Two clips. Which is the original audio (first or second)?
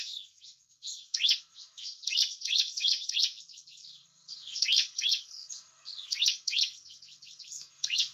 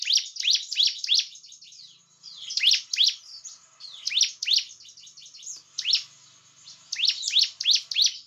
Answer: second